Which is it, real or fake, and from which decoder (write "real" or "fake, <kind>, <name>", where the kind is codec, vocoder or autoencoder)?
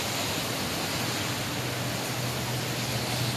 real